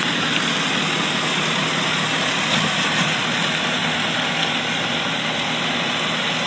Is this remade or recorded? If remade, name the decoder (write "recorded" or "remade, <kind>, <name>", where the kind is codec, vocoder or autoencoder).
recorded